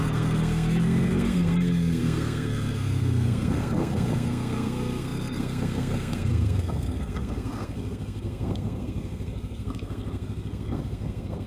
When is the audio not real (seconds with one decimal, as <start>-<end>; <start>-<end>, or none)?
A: 0.0-11.5